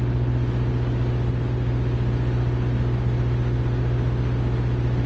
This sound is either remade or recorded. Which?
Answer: recorded